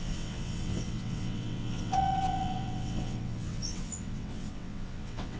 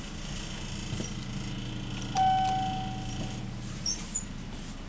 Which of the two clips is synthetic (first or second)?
first